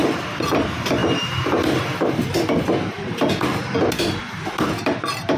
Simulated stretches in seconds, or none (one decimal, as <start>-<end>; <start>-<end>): none

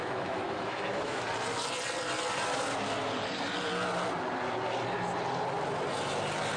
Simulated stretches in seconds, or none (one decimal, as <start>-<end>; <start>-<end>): 0.0-1.2

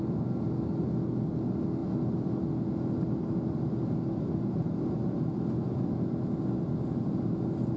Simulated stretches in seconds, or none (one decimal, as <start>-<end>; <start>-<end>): none

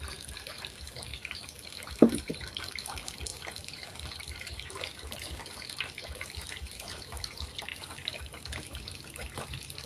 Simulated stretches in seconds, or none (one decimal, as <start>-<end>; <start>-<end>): 0.0-9.9

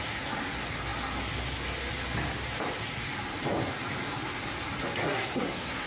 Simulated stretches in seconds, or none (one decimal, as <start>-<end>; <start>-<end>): 5.0-5.9

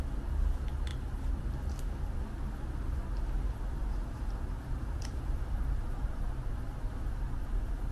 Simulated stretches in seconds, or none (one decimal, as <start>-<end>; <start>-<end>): 0.9-1.4; 3.8-6.3